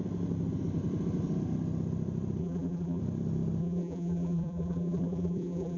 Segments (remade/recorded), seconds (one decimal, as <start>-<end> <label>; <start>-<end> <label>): 0.0-2.4 recorded; 2.4-3.0 remade; 3.0-3.6 recorded; 3.6-5.8 remade